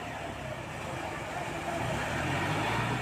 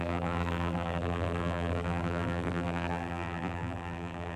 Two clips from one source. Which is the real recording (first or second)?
first